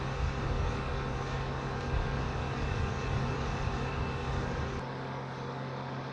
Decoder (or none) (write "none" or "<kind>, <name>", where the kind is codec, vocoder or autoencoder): codec, DAC